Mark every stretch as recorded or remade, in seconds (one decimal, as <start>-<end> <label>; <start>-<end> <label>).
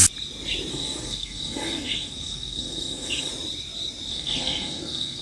0.0-0.7 recorded; 0.7-3.3 remade; 3.3-4.1 recorded; 4.1-5.2 remade